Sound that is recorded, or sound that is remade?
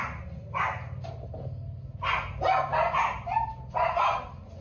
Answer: recorded